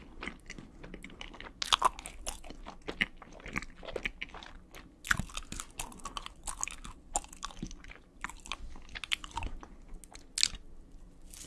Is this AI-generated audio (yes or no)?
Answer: no